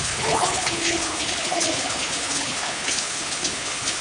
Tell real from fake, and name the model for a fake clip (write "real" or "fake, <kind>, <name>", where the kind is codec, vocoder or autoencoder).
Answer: fake, codec, HILCodec